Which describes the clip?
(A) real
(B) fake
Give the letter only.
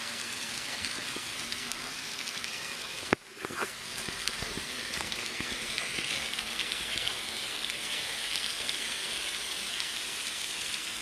B